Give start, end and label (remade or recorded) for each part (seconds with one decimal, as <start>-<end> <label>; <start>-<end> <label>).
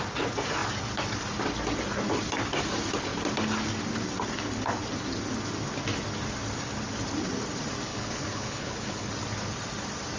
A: 0.0-7.9 recorded; 7.9-9.1 remade; 9.1-10.2 recorded